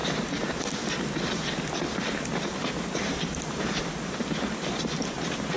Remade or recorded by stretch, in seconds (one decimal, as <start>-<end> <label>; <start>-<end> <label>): 0.0-2.6 recorded; 2.6-3.8 remade; 3.8-5.6 recorded